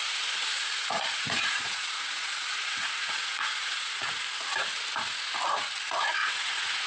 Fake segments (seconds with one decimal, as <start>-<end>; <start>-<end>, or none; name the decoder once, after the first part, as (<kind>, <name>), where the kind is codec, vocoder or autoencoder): 0.0-4.1 (vocoder, Vocos); 6.2-6.9